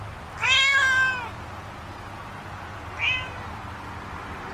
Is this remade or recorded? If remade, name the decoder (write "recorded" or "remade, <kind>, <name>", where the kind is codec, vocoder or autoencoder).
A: recorded